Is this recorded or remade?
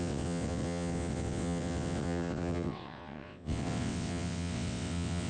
remade